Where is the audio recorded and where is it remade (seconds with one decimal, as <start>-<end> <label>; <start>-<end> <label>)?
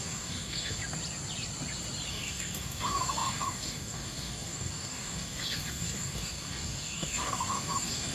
0.0-0.8 remade; 0.8-2.1 recorded; 2.1-8.1 remade